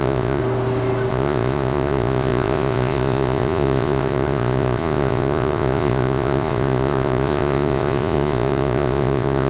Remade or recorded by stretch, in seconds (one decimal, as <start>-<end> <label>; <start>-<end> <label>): 0.0-0.4 remade; 0.4-1.1 recorded; 1.1-9.5 remade